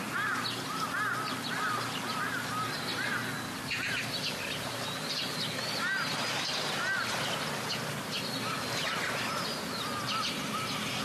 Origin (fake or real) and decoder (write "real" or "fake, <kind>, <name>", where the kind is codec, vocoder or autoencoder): real